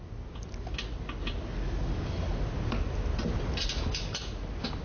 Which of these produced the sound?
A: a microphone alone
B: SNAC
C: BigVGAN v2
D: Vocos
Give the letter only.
A